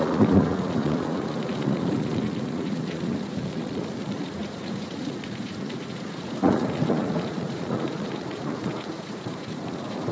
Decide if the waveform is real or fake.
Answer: fake